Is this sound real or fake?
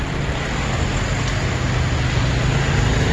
real